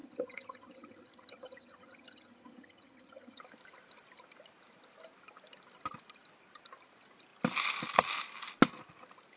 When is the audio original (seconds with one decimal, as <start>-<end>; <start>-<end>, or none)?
3.4-9.4